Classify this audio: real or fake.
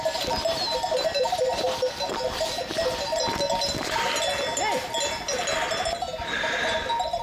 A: real